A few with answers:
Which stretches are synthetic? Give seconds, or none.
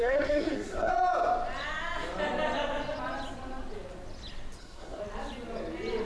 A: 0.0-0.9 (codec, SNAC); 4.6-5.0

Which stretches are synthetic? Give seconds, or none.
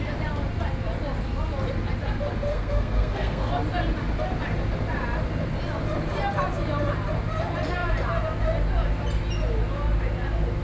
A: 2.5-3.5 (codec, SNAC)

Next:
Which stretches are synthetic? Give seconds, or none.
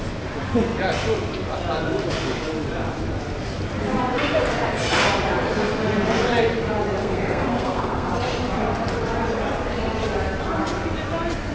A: 7.0-8.1 (codec, SNAC)